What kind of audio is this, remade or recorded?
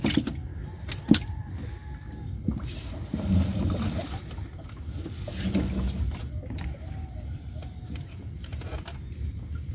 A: recorded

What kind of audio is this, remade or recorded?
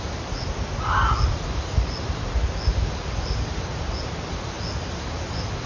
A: recorded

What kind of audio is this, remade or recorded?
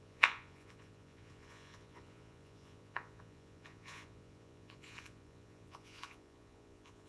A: remade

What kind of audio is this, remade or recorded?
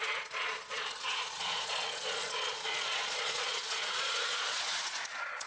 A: remade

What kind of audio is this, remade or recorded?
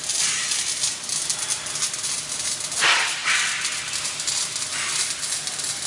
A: recorded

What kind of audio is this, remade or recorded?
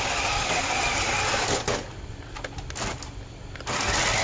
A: recorded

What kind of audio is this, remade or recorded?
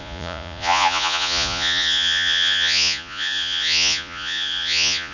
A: remade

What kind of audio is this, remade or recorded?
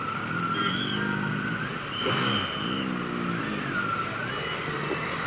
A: recorded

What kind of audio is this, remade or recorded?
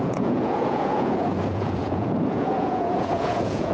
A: remade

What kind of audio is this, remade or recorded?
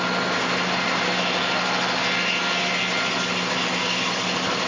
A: recorded